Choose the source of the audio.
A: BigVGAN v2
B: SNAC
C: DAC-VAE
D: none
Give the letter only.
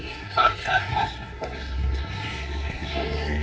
B